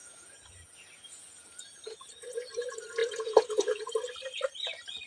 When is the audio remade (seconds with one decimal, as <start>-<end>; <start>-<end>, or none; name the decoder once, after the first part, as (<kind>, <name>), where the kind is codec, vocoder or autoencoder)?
0.0-2.4 (vocoder, Vocos); 3.0-3.9

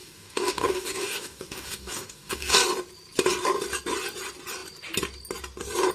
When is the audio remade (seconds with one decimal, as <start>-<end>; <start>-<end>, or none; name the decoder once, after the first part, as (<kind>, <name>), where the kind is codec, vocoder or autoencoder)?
0.0-2.6 (codec, DAC)

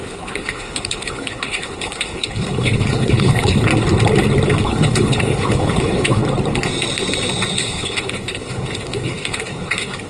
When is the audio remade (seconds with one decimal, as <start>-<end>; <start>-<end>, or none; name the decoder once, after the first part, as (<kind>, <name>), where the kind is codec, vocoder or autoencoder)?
0.0-3.7 (codec, HILCodec); 4.6-6.2; 7.5-10.1

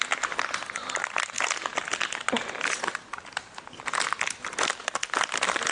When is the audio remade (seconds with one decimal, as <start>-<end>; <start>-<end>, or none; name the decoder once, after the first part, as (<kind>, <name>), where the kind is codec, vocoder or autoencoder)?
none

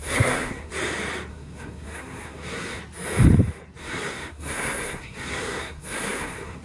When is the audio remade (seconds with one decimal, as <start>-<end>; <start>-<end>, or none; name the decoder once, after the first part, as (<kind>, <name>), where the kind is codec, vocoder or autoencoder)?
0.0-0.7 (codec, SNAC); 1.3-2.8; 3.8-6.6

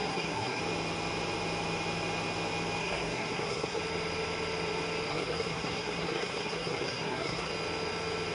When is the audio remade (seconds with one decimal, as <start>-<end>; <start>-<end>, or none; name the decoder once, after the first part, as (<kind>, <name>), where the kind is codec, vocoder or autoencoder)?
0.0-0.6 (codec, SNAC); 2.8-3.8; 5.1-7.5